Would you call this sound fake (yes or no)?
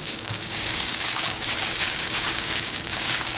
yes